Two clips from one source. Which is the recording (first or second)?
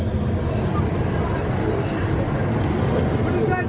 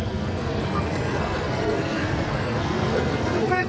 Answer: first